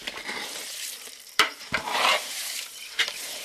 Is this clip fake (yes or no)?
yes